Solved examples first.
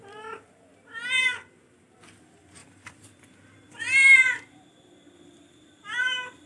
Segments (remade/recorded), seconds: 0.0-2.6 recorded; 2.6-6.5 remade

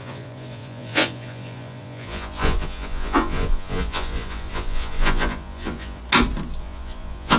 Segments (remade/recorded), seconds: 0.0-6.0 remade; 6.0-6.6 recorded; 6.6-7.4 remade